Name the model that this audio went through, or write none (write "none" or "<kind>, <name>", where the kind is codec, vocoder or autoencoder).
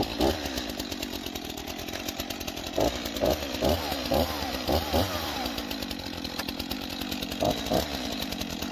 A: vocoder, BigVGAN v2